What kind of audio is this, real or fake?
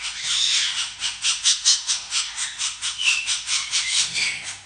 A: fake